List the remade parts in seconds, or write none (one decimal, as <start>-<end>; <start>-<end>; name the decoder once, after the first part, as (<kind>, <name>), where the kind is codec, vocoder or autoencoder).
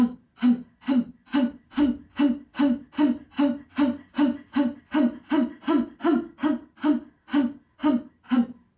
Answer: none